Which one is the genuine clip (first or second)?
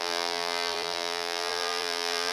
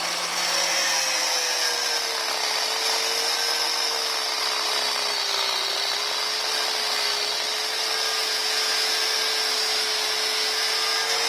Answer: second